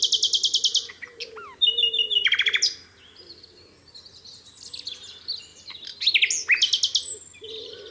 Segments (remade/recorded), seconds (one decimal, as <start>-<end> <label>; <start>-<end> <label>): 0.0-7.9 recorded